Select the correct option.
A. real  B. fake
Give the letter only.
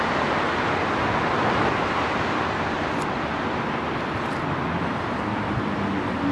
A